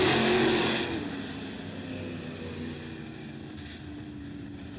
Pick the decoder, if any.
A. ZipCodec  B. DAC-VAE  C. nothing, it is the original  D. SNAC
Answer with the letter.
C